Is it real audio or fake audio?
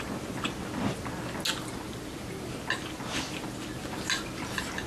real